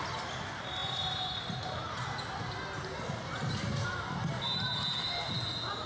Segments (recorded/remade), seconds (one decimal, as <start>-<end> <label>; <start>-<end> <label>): 0.0-5.9 recorded